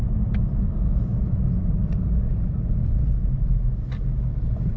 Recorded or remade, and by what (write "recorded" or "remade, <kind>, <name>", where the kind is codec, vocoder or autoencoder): recorded